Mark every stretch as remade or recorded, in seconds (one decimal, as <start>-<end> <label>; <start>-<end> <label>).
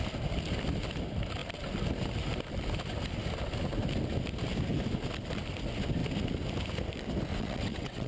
0.0-7.3 recorded; 7.3-8.1 remade